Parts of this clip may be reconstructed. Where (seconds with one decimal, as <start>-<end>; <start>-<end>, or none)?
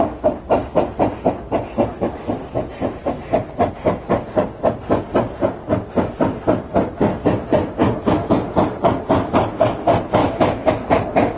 10.2-10.7